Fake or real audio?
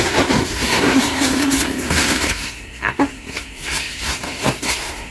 fake